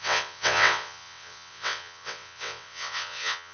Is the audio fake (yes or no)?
yes